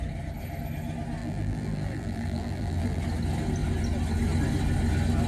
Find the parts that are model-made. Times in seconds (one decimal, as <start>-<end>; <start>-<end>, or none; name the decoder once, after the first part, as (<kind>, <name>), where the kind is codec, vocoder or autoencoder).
1.2-3.0 (vocoder, BigVGAN v2)